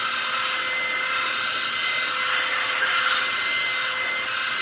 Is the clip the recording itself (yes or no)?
yes